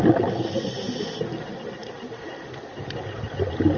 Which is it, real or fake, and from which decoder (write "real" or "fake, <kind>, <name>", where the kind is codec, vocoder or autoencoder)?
real